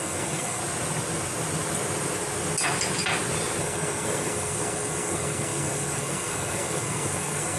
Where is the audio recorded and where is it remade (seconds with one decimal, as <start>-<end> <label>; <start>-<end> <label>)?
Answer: 0.0-0.6 remade; 0.6-3.6 recorded; 3.6-7.6 remade